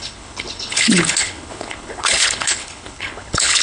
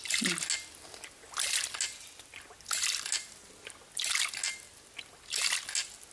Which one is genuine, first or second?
second